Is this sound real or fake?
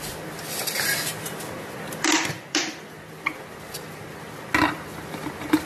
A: real